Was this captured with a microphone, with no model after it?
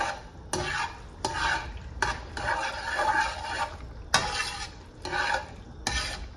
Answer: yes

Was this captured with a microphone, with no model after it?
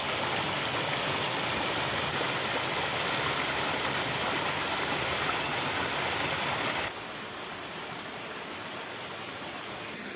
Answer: yes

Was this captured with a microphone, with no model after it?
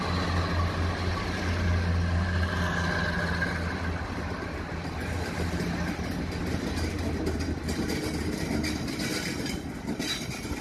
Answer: yes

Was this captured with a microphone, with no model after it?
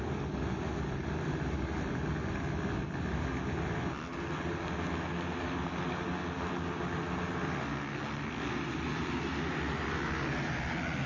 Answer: yes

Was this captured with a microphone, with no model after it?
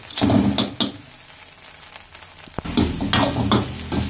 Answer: yes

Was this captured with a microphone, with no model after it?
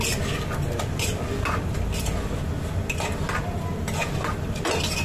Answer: yes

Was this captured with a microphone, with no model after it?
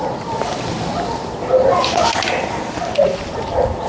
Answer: yes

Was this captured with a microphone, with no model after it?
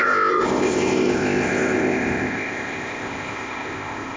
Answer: no